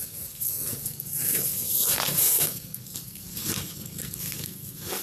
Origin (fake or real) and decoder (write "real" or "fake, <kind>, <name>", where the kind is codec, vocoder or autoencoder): fake, codec, SNAC